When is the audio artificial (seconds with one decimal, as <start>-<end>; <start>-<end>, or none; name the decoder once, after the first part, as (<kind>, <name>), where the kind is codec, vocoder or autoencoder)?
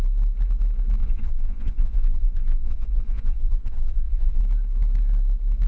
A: 1.0-4.4 (vocoder, Vocos)